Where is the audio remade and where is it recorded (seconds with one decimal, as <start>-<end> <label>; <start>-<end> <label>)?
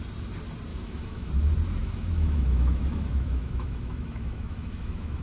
0.0-0.7 recorded; 0.7-1.3 remade; 1.3-1.8 recorded; 1.8-5.2 remade